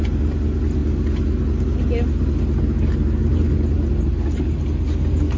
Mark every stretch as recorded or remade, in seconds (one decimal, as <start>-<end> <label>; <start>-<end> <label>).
0.0-5.4 recorded